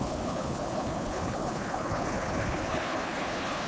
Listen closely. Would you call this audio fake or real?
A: fake